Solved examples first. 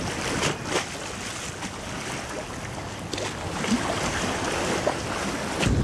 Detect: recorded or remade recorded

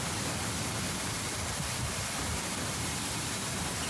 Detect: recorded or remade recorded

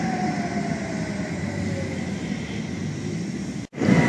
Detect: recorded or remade recorded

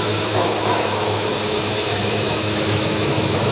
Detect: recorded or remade remade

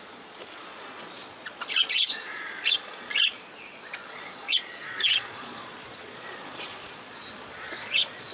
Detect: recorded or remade remade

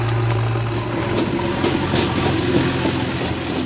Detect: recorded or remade recorded